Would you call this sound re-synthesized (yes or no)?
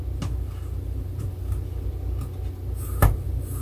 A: no